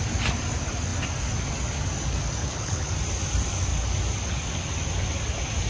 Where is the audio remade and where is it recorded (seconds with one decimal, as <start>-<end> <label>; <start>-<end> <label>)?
0.0-2.4 recorded; 2.4-2.9 remade; 2.9-5.7 recorded